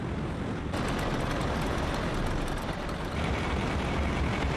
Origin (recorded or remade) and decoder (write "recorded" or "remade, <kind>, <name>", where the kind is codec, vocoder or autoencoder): recorded